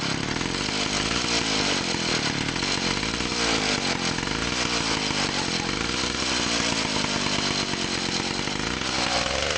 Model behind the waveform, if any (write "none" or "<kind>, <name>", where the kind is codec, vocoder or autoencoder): none